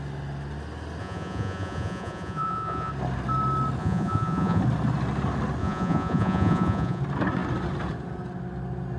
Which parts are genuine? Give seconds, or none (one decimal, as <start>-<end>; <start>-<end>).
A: 0.0-1.0; 2.9-3.8; 4.6-5.6; 7.0-9.0